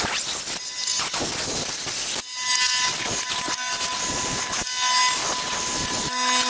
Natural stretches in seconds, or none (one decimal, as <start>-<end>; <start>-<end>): 0.0-6.5

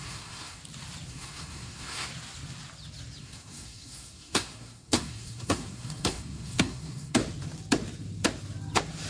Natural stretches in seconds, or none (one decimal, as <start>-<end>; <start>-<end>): 0.6-1.1; 2.1-3.2; 7.2-9.1

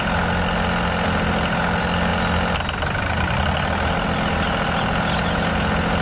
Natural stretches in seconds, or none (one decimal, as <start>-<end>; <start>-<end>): 0.0-6.0

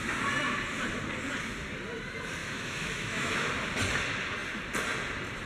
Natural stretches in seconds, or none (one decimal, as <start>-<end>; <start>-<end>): 0.0-2.4; 3.5-5.5

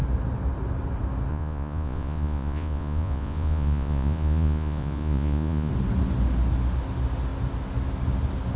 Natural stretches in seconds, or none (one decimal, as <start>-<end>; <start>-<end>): 0.0-1.3; 5.7-8.6

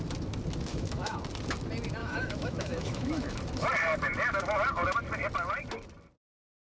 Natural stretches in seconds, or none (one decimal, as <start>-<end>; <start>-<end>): 0.0-0.7; 1.2-2.0; 3.4-6.8

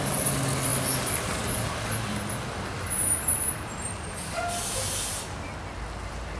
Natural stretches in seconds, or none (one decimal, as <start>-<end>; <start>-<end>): 0.0-6.4